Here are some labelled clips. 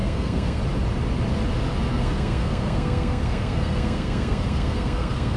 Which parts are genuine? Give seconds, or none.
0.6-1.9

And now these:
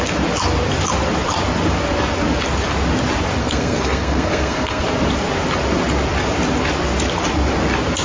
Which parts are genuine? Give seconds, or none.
0.0-3.4; 4.8-8.0

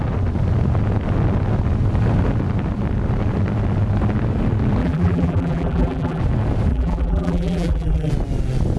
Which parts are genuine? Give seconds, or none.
0.0-4.8; 6.2-6.7; 8.1-8.8

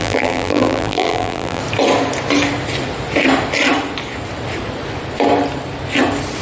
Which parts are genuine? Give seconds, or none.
1.6-6.4

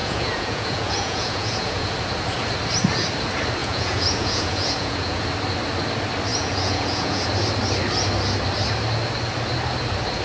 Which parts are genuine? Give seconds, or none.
1.9-3.6; 5.2-6.3; 7.3-10.2